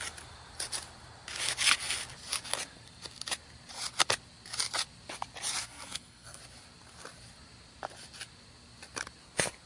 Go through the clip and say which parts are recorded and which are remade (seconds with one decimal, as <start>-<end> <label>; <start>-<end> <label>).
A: 0.0-5.6 recorded; 5.6-6.4 remade; 6.4-9.7 recorded